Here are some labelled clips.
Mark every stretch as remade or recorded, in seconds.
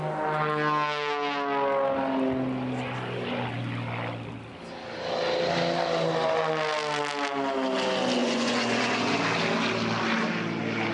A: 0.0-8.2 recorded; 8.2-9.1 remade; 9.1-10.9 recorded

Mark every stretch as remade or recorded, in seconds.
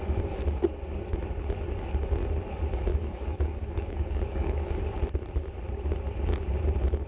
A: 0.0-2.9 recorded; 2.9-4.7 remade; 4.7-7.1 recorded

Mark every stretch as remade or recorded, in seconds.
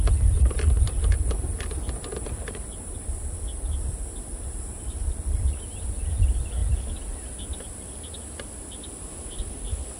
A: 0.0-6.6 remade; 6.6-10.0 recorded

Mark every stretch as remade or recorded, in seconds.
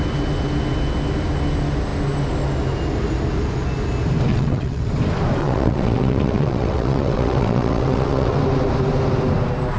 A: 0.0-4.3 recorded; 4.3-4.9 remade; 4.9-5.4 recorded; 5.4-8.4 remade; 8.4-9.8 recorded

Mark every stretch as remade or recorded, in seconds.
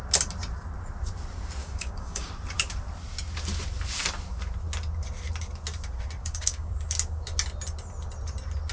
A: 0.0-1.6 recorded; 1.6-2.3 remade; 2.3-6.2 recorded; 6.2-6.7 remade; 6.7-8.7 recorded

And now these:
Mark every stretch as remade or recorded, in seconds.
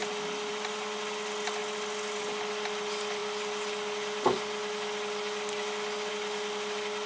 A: 0.0-7.1 recorded